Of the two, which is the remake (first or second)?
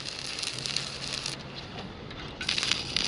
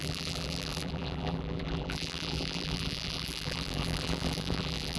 second